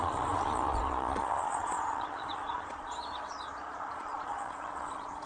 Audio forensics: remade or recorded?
remade